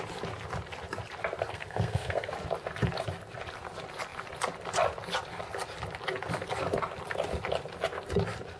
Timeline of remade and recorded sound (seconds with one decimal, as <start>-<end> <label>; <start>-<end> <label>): 0.0-1.5 recorded; 1.5-2.3 remade; 2.3-8.6 recorded